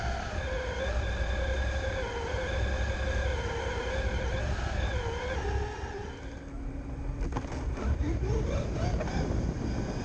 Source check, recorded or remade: recorded